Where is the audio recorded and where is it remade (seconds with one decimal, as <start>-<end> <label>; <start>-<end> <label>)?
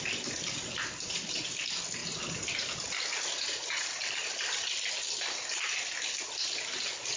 0.0-7.2 recorded